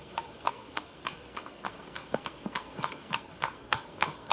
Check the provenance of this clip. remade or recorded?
remade